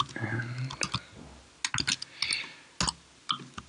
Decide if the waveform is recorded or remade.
recorded